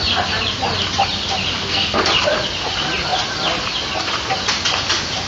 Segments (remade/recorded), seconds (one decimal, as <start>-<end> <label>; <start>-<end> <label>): 0.0-1.5 recorded; 1.5-2.0 remade; 2.0-5.3 recorded